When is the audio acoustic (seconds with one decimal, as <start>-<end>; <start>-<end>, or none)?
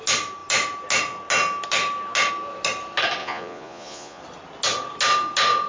0.0-3.2; 4.2-5.7